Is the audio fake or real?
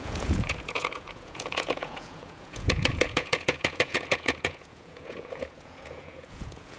fake